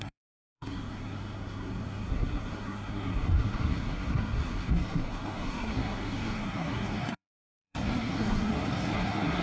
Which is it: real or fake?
fake